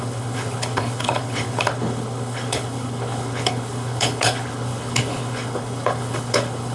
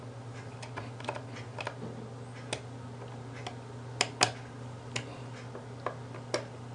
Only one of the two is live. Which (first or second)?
second